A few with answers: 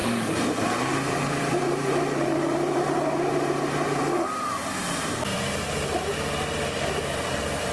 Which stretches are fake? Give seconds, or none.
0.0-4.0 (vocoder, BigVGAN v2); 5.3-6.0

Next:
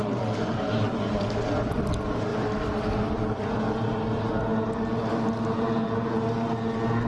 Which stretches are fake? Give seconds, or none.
2.3-3.6 (vocoder, BigVGAN v2)